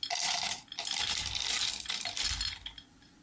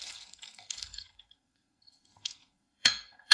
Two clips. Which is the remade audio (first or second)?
second